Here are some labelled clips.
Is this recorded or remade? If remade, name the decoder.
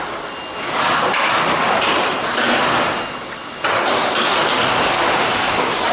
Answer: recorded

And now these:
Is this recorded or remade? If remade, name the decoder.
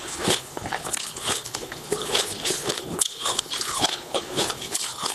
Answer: remade, codec, HILCodec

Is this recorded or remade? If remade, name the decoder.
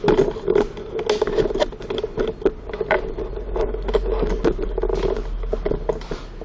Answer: recorded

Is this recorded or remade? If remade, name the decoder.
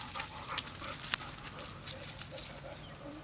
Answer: recorded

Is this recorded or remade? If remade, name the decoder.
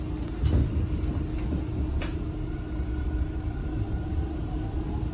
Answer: recorded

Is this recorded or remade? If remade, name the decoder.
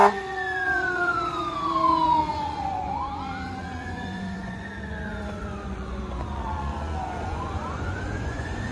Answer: remade, vocoder, Vocos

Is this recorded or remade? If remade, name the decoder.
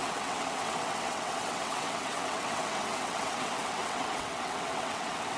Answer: remade, vocoder, WaveNeXt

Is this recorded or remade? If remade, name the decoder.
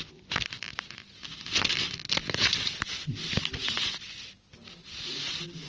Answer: recorded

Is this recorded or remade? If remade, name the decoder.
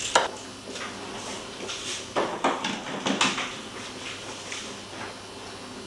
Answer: recorded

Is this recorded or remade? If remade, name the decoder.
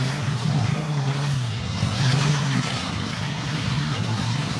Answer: remade, codec, SNAC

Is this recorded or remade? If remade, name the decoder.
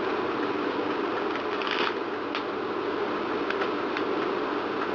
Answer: recorded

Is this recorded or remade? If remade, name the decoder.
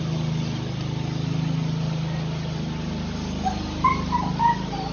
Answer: recorded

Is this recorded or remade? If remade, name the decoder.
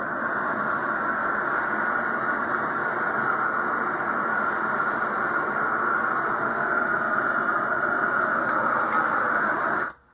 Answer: recorded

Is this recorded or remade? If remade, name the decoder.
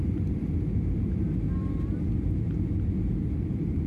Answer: recorded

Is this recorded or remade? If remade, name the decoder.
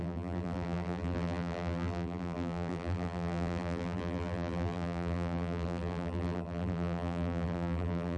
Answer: remade, vocoder, BigVGAN v2